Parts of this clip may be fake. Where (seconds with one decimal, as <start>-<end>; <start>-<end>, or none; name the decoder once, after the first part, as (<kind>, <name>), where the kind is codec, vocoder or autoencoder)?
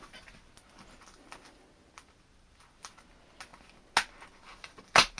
none